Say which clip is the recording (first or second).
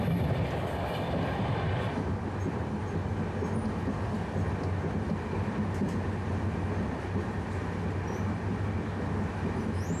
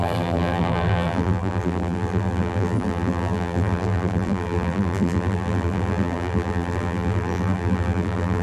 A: first